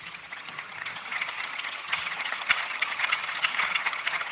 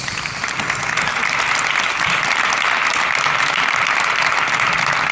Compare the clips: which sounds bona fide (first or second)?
second